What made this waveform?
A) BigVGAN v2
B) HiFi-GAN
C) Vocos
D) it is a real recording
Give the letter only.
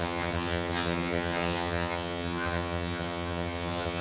B